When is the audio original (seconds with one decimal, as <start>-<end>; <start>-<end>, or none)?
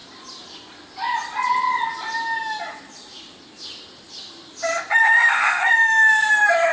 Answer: 0.0-5.0; 6.3-6.7